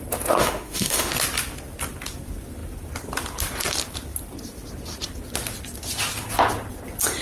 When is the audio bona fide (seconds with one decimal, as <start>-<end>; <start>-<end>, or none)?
0.0-0.4; 1.1-7.2